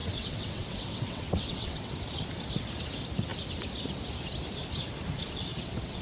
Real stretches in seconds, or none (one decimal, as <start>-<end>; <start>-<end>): 1.9-5.5